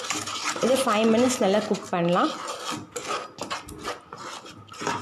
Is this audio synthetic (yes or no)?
no